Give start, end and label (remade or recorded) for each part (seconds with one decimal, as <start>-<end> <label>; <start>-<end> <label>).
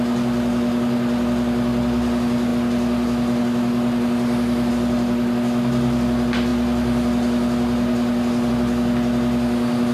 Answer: 0.0-9.9 recorded